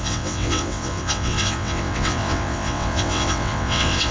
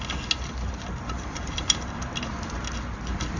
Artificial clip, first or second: first